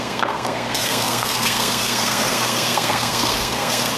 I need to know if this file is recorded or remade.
remade